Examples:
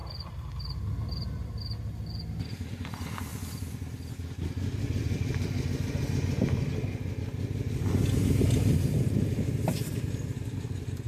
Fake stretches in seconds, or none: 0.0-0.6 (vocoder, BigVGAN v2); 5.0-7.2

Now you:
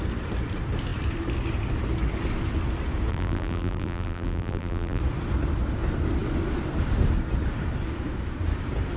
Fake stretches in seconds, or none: 3.1-5.0 (vocoder, BigVGAN v2)

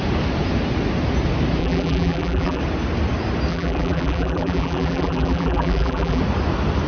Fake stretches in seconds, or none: 1.6-2.6 (vocoder, BigVGAN v2); 3.5-6.2

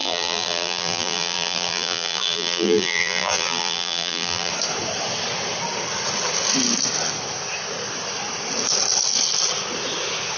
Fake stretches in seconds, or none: 0.0-4.5 (vocoder, BigVGAN v2)

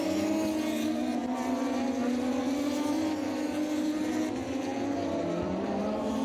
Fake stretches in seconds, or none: 4.7-5.8 (vocoder, BigVGAN v2)

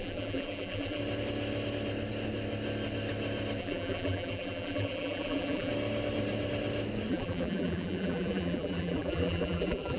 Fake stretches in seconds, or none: 0.0-1.0 (vocoder, BigVGAN v2); 3.6-5.7; 7.1-10.0

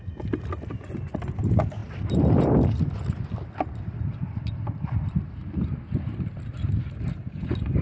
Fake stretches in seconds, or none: 1.8-2.8 (vocoder, BigVGAN v2)